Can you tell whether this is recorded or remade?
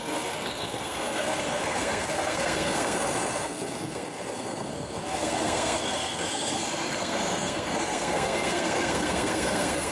remade